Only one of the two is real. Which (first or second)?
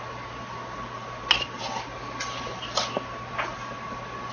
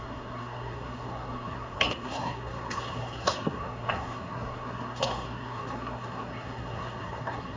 first